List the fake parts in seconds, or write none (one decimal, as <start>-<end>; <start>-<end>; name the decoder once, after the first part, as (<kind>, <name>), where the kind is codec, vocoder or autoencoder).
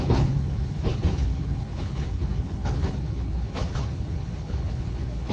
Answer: 0.0-5.3 (codec, HILCodec)